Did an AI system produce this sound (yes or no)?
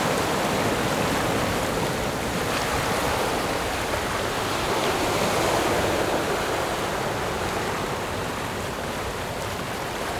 no